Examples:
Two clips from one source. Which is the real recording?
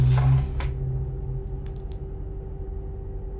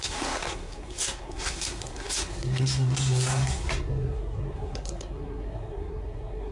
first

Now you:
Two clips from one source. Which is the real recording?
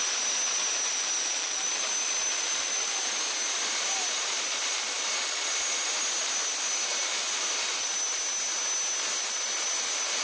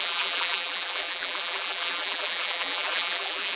first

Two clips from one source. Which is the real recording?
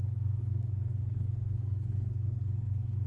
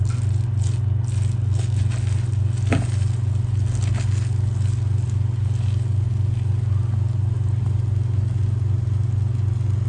second